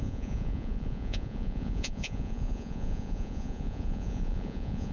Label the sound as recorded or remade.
remade